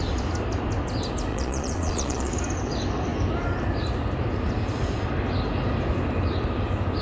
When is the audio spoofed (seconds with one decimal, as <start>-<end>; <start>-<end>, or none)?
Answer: 1.3-2.3